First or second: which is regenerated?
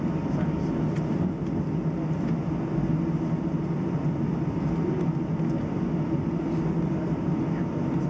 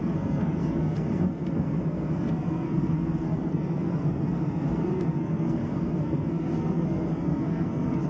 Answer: second